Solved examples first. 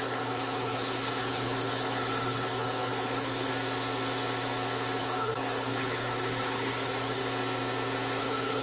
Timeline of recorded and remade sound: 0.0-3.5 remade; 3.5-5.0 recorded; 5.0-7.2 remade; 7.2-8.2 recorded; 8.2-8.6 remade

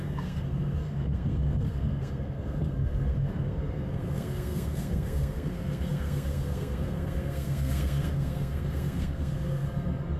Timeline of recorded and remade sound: 0.0-10.2 remade

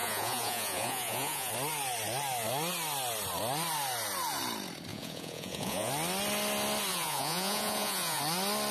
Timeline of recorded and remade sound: 0.0-1.5 remade; 1.5-4.9 recorded; 4.9-5.9 remade; 5.9-6.9 recorded; 6.9-8.2 remade; 8.2-8.7 recorded

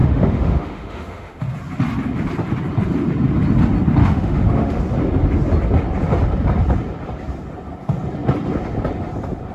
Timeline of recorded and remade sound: 0.0-1.4 remade; 1.4-4.0 recorded; 4.0-4.8 remade; 4.8-9.5 recorded

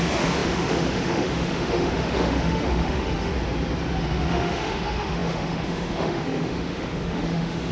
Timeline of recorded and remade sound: 0.0-3.3 remade; 3.3-4.0 recorded; 4.0-7.7 remade